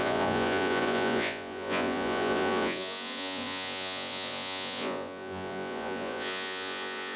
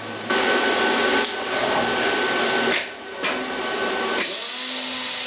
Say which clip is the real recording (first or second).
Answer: second